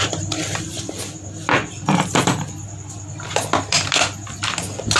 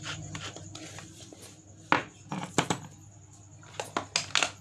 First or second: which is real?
second